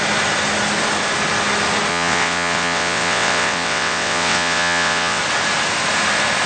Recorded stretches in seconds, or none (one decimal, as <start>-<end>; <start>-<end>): 0.0-1.9; 5.2-6.5